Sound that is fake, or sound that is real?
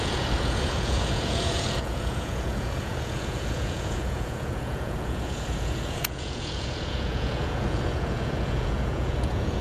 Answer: fake